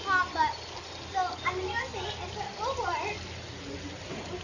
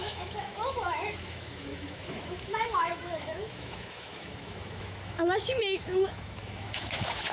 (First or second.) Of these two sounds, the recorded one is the first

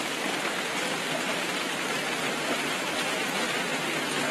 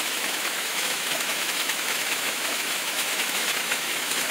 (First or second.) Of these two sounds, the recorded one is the first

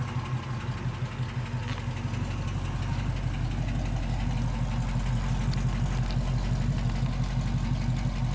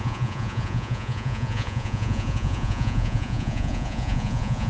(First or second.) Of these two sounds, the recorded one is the first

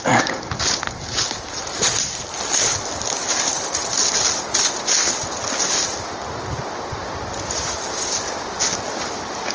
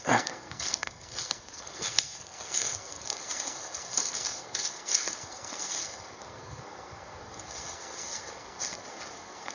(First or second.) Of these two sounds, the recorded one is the first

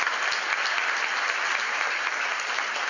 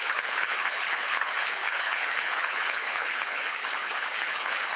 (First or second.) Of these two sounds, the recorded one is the first